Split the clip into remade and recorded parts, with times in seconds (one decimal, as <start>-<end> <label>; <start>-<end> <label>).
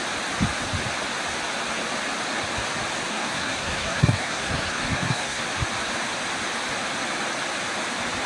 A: 0.0-3.1 recorded; 3.1-5.4 remade; 5.4-8.3 recorded